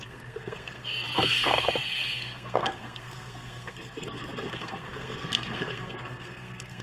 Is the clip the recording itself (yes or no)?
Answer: no